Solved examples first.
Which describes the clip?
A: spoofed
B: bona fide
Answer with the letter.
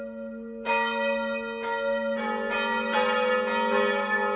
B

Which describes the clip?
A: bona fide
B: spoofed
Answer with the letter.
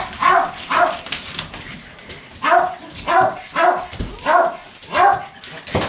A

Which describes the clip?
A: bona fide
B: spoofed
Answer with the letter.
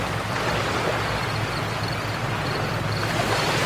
A